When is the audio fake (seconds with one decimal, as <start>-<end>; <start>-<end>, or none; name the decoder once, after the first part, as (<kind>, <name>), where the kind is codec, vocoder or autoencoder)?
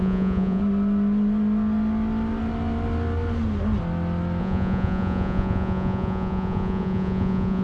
0.0-0.6 (vocoder, Vocos); 4.4-7.6